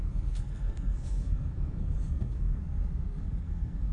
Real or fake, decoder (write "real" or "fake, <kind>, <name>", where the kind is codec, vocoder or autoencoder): fake, codec, SNAC